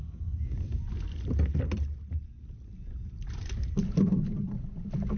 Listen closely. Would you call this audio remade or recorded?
recorded